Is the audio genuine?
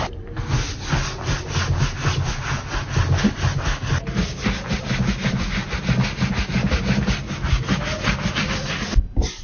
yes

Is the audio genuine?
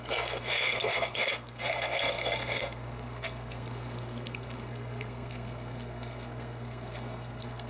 no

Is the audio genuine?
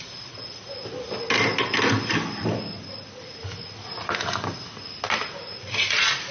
yes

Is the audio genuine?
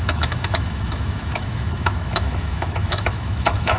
no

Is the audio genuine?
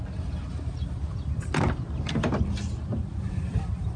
yes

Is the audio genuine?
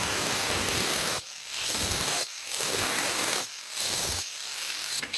no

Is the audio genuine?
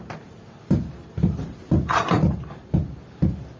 no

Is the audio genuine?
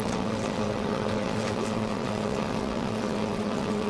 no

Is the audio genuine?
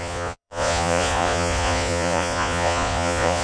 no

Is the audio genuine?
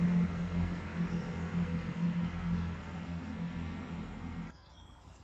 no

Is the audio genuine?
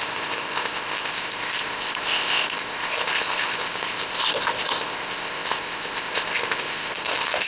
no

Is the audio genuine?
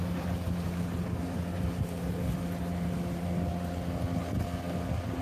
yes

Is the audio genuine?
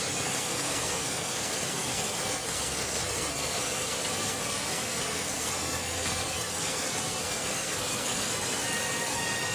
no